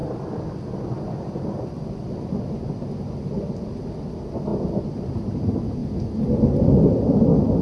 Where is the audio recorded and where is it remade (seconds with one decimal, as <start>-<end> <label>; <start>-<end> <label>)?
0.0-7.6 recorded